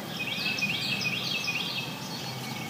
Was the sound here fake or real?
real